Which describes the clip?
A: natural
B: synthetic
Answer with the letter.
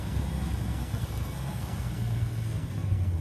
B